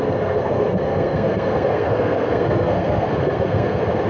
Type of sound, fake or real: fake